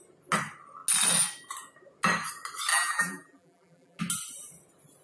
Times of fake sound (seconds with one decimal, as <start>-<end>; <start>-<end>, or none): 2.7-4.0

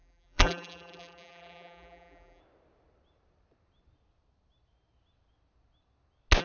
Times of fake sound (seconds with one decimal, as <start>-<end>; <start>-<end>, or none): 0.0-2.4

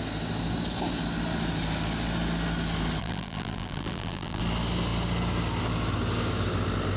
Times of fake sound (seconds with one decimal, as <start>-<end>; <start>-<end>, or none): 3.0-4.4

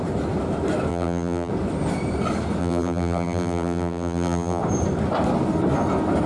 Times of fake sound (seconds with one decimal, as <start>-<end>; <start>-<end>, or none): 0.9-1.5; 2.6-4.6

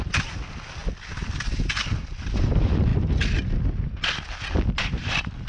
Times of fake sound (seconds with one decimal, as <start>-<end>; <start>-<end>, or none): 0.0-0.8; 1.7-2.9; 4.8-5.5